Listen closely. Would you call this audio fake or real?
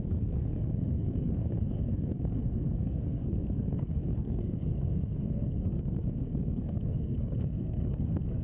fake